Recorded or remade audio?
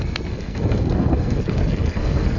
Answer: remade